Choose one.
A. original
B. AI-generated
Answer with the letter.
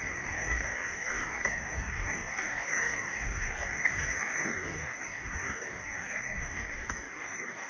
B